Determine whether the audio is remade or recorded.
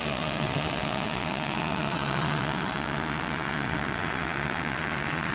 remade